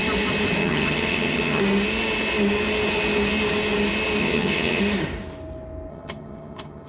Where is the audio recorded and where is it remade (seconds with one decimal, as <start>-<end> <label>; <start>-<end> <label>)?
0.0-0.6 recorded; 0.6-1.6 remade; 1.6-4.2 recorded; 4.2-4.8 remade; 4.8-5.9 recorded; 5.9-6.9 remade